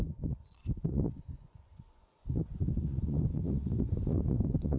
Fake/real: fake